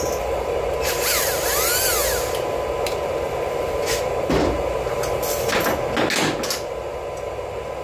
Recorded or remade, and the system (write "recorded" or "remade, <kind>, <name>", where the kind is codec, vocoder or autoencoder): recorded